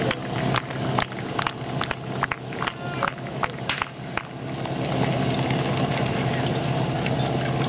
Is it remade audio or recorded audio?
recorded